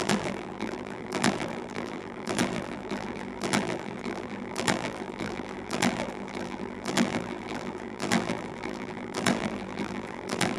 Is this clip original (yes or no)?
no